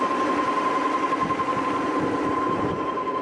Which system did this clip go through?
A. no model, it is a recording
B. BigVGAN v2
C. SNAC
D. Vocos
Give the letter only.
A